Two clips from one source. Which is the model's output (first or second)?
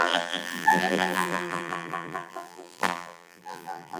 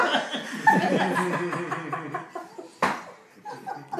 first